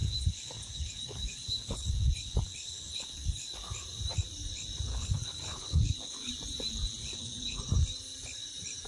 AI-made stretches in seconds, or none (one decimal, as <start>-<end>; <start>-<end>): 0.0-3.7; 4.9-6.3; 7.0-7.6